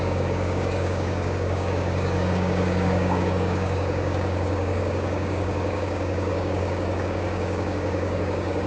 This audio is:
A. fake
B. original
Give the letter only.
A